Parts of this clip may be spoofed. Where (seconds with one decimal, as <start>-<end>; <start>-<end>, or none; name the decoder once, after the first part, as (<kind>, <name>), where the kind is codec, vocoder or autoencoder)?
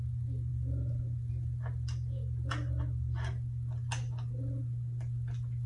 none